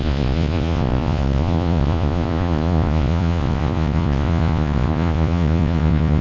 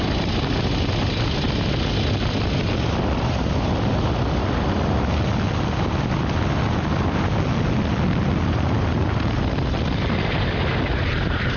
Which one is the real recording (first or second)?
second